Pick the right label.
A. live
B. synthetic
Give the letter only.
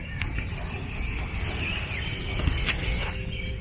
A